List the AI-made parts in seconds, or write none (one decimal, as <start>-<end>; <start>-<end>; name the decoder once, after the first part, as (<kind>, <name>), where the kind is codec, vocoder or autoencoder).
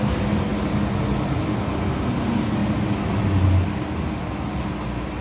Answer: none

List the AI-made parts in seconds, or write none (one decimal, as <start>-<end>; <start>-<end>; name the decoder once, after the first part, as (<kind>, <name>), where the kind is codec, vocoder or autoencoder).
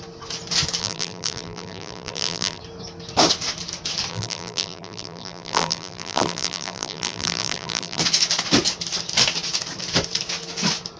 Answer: 0.8-2.6 (vocoder, BigVGAN v2); 4.1-8.0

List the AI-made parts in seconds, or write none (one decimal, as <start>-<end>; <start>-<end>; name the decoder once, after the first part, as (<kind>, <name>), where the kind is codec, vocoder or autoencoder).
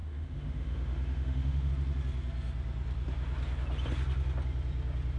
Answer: 0.0-1.7 (autoencoder, DAC-VAE)